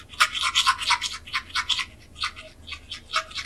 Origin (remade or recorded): recorded